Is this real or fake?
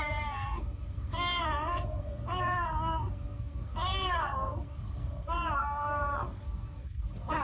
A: fake